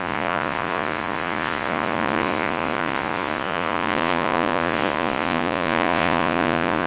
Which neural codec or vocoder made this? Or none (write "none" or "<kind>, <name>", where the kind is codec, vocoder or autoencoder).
vocoder, Vocos